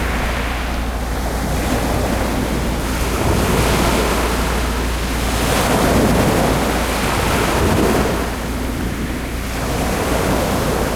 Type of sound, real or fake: real